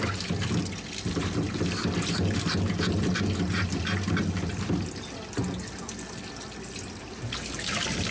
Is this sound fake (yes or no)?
no